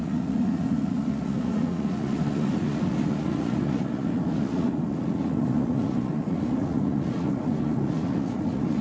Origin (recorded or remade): remade